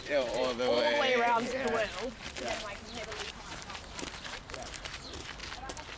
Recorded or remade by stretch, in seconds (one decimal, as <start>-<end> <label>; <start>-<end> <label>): 0.0-5.4 remade; 5.4-6.0 recorded